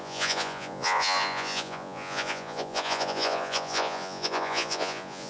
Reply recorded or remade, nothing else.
remade